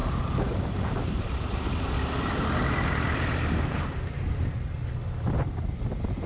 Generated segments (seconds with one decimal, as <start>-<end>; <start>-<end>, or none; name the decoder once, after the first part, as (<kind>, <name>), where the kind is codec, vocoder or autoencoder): 0.0-3.8 (vocoder, BigVGAN v2)